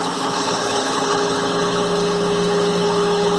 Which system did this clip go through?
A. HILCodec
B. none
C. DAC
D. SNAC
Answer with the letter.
A